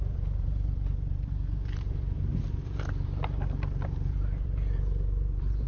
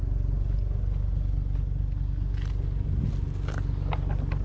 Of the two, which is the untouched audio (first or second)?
second